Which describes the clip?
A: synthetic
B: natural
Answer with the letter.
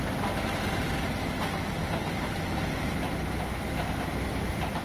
B